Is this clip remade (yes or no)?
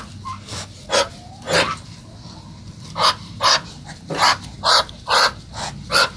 no